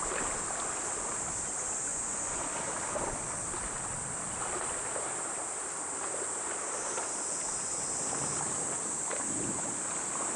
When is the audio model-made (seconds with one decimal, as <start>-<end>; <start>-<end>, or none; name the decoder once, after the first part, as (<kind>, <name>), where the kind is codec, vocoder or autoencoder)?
1.9-2.4 (vocoder, Vocos)